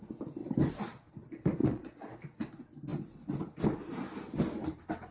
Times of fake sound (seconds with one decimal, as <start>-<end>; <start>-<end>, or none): 1.6-2.1